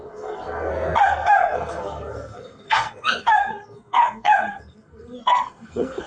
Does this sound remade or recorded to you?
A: remade